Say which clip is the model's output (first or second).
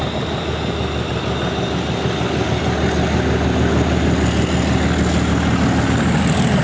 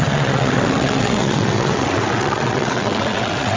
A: second